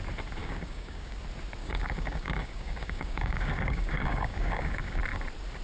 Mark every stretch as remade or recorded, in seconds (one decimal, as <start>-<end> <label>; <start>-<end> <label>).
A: 0.0-0.4 recorded; 0.4-1.2 remade; 1.2-1.6 recorded; 1.6-5.0 remade; 5.0-5.6 recorded